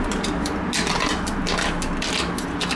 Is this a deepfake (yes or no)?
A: no